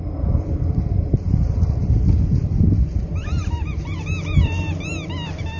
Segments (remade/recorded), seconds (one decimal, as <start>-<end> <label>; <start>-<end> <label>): 0.0-5.6 recorded